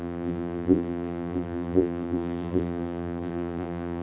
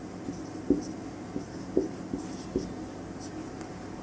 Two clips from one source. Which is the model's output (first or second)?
first